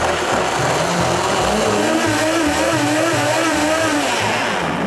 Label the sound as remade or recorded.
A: recorded